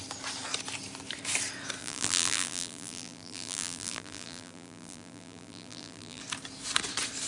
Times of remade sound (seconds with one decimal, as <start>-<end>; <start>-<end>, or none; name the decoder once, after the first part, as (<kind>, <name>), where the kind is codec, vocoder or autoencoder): 1.8-6.2 (vocoder, BigVGAN v2)